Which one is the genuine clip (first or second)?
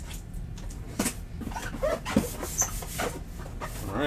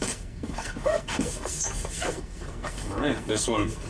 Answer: first